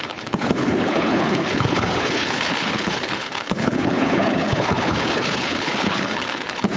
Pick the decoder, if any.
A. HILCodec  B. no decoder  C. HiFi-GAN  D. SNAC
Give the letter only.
A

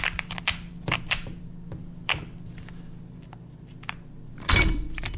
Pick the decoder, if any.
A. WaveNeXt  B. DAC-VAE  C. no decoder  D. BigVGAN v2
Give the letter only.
C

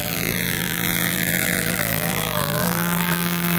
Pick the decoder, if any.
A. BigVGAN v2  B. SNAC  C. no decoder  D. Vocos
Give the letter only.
A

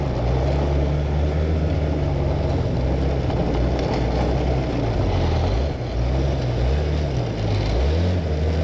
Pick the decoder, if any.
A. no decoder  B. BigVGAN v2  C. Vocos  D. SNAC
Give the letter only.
A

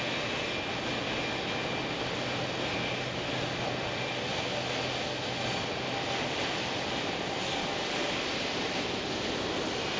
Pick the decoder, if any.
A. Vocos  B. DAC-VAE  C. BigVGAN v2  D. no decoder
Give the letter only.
D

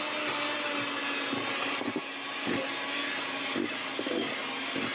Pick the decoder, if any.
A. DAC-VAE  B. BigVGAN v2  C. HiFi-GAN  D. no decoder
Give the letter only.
D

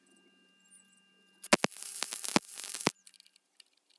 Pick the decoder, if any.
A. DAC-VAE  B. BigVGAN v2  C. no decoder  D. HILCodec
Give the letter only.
C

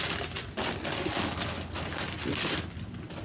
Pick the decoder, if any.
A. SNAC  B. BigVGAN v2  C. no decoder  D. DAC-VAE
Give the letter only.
C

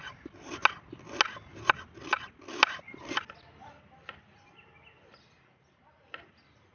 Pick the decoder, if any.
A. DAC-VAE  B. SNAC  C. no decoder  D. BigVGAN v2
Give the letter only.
C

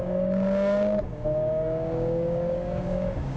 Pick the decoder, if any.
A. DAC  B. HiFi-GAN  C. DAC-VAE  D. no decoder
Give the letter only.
A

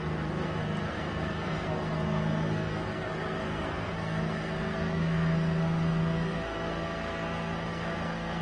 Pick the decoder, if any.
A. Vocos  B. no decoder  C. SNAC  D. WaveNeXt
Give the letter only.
C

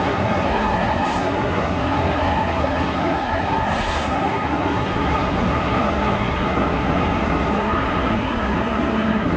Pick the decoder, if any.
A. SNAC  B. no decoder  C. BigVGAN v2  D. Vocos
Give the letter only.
A